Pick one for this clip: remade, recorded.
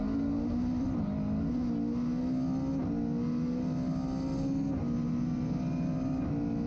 recorded